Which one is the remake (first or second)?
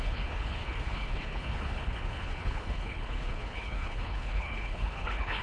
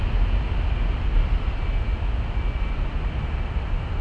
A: first